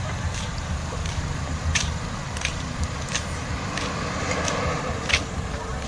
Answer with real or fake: fake